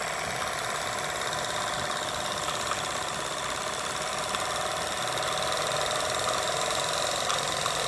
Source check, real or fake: real